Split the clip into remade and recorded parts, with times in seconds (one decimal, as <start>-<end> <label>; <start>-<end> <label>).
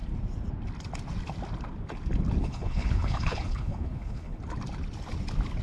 0.0-2.4 recorded; 2.4-4.4 remade; 4.4-5.6 recorded